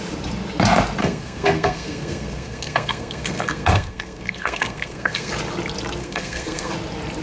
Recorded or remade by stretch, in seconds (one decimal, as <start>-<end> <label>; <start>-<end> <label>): 0.0-1.0 recorded; 1.0-5.3 remade; 5.3-6.0 recorded; 6.0-6.7 remade; 6.7-7.2 recorded